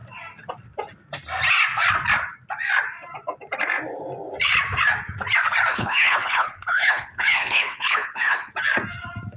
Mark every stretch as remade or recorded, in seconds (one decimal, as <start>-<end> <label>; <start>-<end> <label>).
0.0-5.7 recorded; 5.7-8.5 remade; 8.5-9.4 recorded